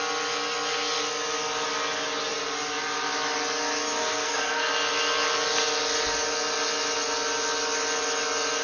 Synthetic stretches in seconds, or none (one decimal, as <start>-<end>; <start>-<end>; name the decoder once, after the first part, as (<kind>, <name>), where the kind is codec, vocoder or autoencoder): 4.0-4.7 (codec, SNAC)